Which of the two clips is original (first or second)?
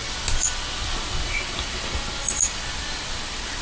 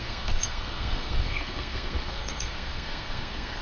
first